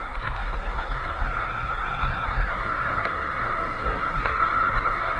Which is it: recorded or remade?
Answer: remade